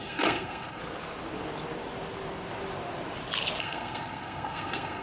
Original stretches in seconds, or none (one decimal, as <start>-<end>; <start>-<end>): 0.8-3.6